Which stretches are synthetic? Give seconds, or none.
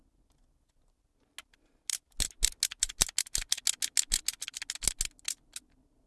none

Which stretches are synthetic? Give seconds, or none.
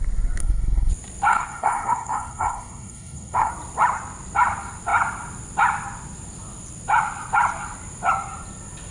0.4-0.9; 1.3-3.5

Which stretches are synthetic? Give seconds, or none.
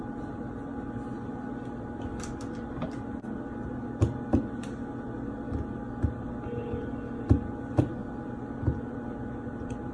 none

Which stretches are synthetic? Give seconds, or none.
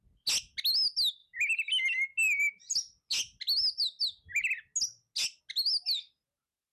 none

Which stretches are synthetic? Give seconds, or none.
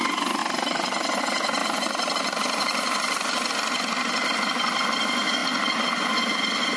0.4-1.2; 1.6-3.5; 5.4-6.0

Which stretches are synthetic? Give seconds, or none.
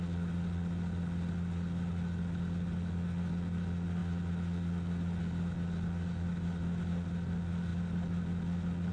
none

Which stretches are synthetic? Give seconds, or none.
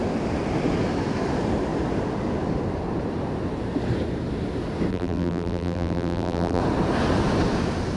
4.9-6.6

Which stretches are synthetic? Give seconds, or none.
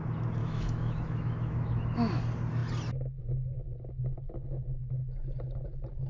0.4-2.2